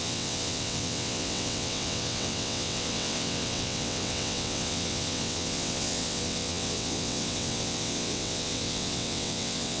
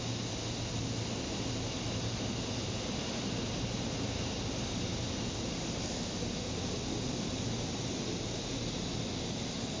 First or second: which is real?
second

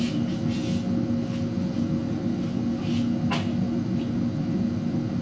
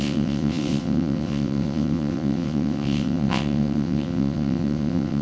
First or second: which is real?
first